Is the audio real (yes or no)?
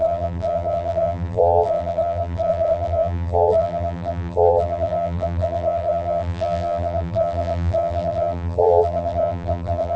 no